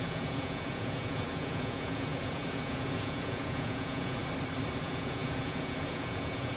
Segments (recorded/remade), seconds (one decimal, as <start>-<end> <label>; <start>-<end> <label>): 0.0-4.2 remade; 4.2-4.8 recorded; 4.8-6.6 remade